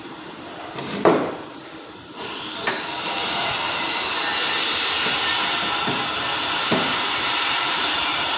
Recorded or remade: remade